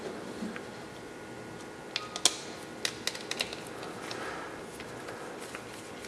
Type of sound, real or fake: real